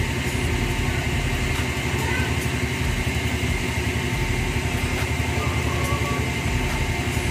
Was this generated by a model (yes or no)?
no